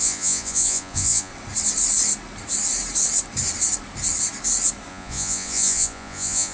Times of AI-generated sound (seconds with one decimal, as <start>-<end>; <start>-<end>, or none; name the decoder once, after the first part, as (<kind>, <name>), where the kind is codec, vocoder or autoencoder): 0.0-1.3 (vocoder, Vocos); 4.9-6.5